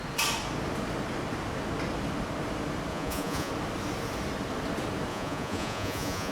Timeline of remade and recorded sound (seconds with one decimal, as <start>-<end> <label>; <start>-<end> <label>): 0.0-2.9 recorded; 2.9-3.5 remade; 3.5-5.1 recorded; 5.1-6.3 remade